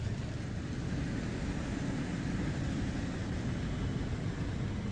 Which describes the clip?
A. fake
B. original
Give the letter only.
B